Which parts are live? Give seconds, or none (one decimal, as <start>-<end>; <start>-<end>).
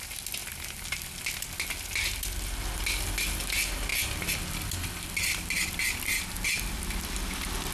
0.0-7.7